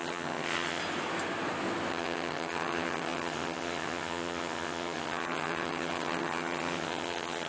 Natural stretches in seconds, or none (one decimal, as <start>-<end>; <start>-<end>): 0.8-1.9